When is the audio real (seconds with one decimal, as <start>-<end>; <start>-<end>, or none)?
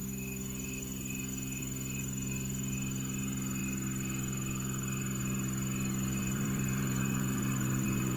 0.0-6.2